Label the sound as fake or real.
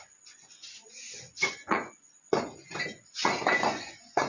fake